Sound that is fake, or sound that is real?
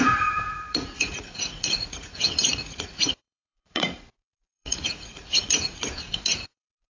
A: fake